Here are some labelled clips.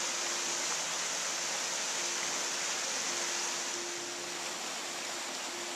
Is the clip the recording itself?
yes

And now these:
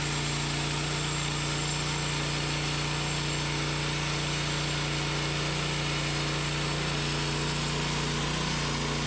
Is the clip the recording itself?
yes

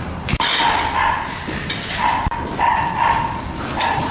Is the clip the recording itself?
yes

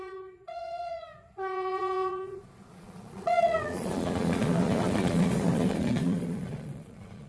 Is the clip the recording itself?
no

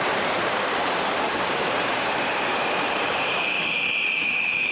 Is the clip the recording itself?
no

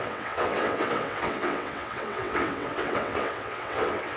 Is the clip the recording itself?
no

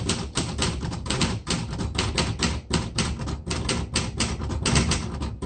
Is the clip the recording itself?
yes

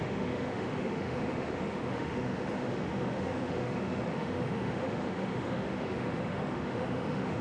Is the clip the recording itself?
no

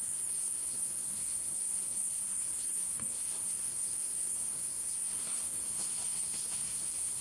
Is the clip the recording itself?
no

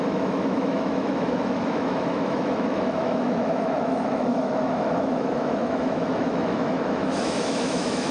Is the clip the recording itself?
no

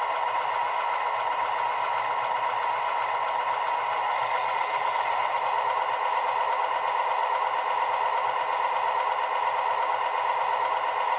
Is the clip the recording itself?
yes